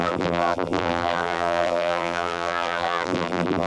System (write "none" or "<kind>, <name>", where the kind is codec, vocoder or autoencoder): vocoder, BigVGAN v2